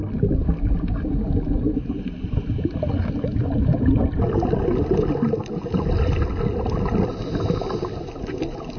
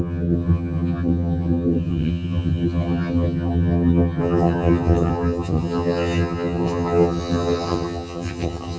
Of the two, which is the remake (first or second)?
second